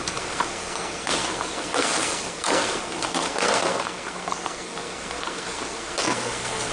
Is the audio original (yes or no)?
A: no